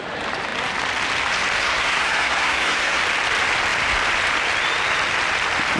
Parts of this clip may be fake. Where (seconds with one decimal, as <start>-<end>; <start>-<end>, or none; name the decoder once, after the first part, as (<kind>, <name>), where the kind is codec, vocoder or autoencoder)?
1.6-3.0 (codec, SNAC)